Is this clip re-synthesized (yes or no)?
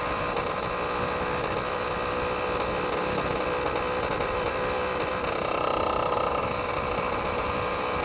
no